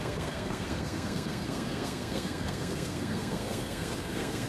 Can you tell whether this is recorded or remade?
remade